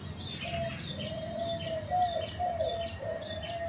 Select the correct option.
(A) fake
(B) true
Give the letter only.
B